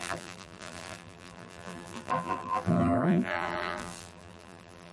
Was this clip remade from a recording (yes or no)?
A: yes